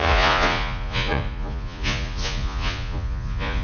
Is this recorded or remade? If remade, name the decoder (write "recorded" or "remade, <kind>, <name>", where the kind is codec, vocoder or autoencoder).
remade, vocoder, Vocos